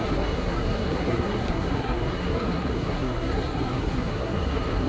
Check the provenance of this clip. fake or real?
fake